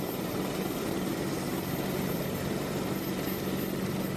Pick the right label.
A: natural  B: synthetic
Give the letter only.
A